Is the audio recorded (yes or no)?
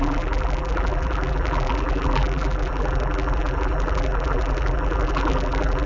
no